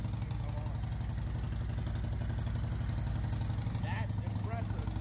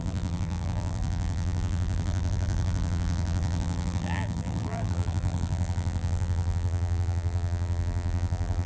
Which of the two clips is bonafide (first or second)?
first